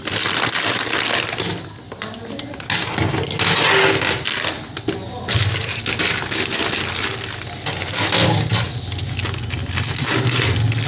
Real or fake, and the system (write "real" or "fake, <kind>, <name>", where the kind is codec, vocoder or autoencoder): real